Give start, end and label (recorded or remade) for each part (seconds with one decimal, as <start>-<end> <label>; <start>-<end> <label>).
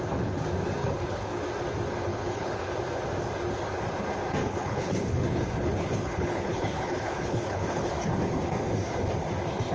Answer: 0.0-0.8 recorded; 0.8-1.4 remade; 1.4-2.1 recorded; 2.1-2.7 remade; 2.7-4.4 recorded; 4.4-7.9 remade; 7.9-9.7 recorded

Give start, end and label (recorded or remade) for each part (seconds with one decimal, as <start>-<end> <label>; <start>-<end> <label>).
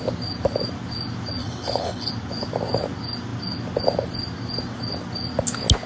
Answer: 0.0-1.4 recorded; 1.4-2.1 remade; 2.1-5.9 recorded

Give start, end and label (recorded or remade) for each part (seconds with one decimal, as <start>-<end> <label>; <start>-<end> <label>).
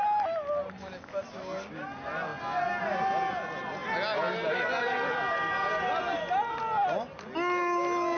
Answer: 0.0-8.2 recorded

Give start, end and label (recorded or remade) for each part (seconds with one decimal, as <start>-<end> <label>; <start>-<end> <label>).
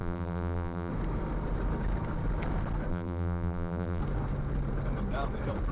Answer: 0.0-0.9 remade; 0.9-2.9 recorded; 2.9-4.0 remade; 4.0-5.7 recorded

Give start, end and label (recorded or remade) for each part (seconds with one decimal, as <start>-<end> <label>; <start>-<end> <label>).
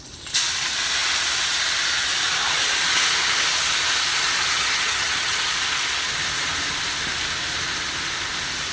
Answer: 0.0-4.5 recorded; 4.5-5.5 remade; 5.5-8.7 recorded